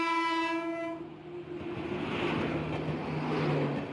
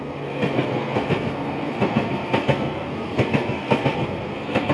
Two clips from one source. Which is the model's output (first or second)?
second